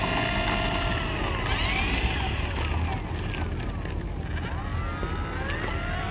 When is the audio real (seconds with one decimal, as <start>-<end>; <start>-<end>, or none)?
0.0-6.1